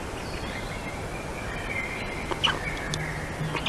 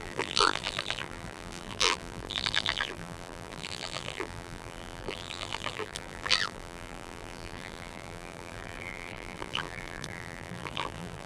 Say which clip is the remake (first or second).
second